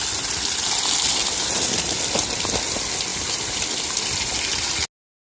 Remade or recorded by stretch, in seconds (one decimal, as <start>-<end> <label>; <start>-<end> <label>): 0.0-5.2 recorded